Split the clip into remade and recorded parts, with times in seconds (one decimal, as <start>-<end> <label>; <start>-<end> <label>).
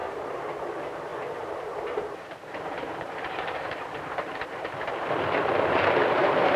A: 0.0-6.6 remade